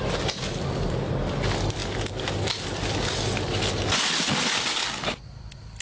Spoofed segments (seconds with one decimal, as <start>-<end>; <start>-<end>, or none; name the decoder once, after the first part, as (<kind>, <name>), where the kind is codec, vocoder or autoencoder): none